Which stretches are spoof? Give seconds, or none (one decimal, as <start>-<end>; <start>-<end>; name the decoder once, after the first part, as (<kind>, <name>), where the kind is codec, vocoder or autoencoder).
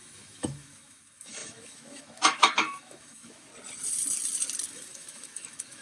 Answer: 0.0-3.5 (autoencoder, DAC-VAE); 4.7-5.8